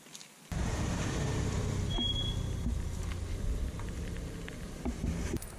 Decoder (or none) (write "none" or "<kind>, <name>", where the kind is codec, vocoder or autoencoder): none